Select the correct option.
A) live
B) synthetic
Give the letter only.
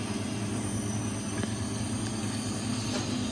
A